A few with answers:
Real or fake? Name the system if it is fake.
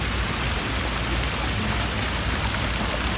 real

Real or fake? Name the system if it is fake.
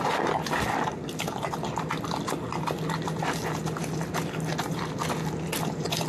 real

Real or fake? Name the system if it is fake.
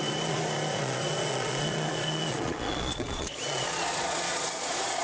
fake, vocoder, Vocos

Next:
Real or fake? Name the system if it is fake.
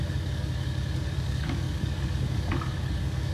fake, codec, DAC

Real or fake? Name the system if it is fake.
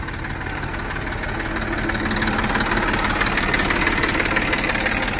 real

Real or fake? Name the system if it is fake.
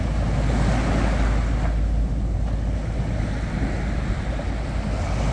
real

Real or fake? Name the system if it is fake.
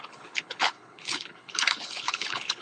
fake, codec, HILCodec